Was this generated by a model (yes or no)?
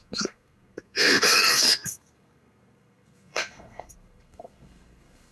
yes